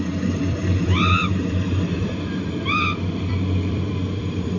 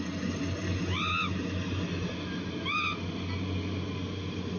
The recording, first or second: second